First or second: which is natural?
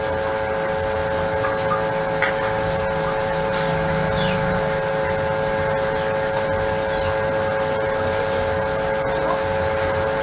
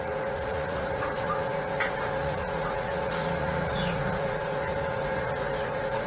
first